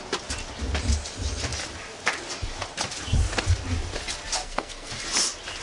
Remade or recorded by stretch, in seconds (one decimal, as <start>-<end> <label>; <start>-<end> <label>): 0.0-4.4 recorded; 4.4-4.9 remade; 4.9-5.6 recorded